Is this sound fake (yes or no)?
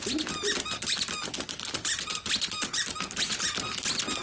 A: no